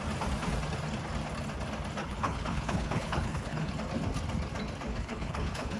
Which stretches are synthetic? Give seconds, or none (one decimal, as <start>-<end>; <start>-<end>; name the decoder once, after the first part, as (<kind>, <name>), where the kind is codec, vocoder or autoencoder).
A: 2.0-3.7 (codec, HILCodec); 4.9-5.8